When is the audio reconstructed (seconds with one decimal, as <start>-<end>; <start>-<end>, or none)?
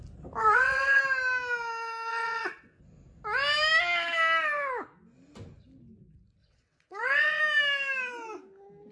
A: 0.4-1.0; 2.1-2.8; 6.4-7.4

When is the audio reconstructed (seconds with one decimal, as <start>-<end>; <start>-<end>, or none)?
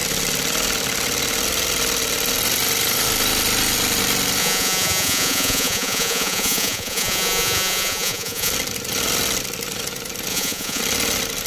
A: 4.4-8.5; 10.3-10.8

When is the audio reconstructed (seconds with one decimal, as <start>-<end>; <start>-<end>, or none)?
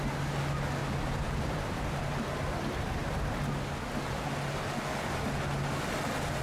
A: 0.8-2.6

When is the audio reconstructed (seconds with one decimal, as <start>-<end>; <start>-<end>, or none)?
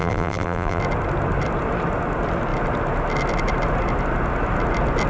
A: 0.0-0.8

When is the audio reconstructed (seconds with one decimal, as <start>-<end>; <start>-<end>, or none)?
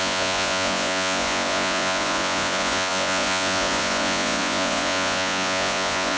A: 0.0-6.2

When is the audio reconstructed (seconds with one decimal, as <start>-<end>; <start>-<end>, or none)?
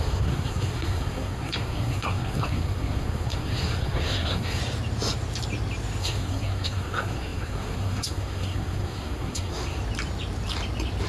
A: 0.0-4.6; 6.0-9.8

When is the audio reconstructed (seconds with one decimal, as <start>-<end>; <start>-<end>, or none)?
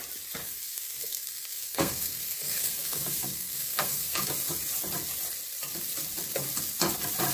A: 0.4-4.3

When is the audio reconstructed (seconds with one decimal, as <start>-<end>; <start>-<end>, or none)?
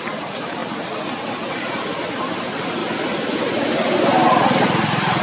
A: 0.0-0.6; 1.5-2.8; 4.0-5.2